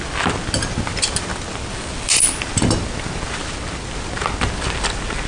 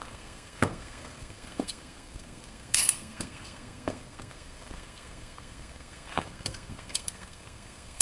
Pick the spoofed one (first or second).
second